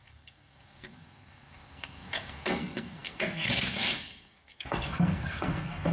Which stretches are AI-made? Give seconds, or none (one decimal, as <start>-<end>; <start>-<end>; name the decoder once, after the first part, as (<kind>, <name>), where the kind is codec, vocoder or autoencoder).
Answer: 0.0-5.9 (codec, SNAC)